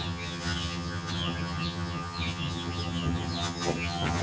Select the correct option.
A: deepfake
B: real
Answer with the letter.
A